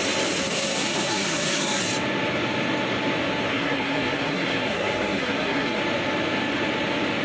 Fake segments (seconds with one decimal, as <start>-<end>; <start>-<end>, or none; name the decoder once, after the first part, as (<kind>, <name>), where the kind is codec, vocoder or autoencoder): 0.4-1.8 (codec, SNAC); 3.5-5.8